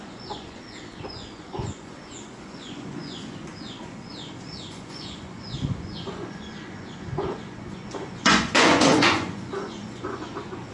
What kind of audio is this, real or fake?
fake